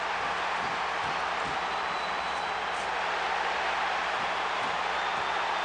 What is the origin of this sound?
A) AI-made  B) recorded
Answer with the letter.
B